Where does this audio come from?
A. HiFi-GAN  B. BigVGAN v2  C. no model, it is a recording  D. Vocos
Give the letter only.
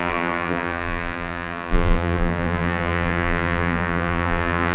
B